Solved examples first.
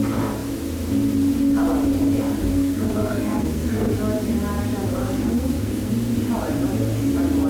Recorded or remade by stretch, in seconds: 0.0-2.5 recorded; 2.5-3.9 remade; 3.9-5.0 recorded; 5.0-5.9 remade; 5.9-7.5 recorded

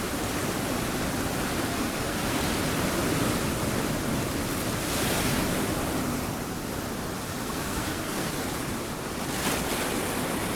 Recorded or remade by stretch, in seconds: 0.0-1.7 recorded; 1.7-2.4 remade; 2.4-7.4 recorded; 7.4-8.3 remade; 8.3-10.5 recorded

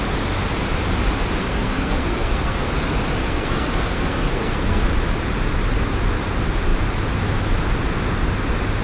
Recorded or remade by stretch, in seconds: 0.0-1.4 recorded; 1.4-2.7 remade; 2.7-3.2 recorded; 3.2-4.8 remade; 4.8-8.8 recorded

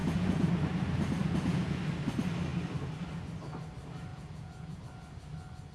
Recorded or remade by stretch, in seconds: 0.0-0.5 remade; 0.5-1.2 recorded; 1.2-1.8 remade; 1.8-4.1 recorded; 4.1-4.8 remade; 4.8-5.7 recorded